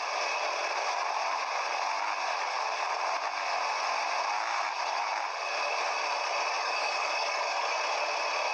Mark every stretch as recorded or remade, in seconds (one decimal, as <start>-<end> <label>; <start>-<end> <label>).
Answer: 0.0-6.6 recorded; 6.6-7.8 remade; 7.8-8.5 recorded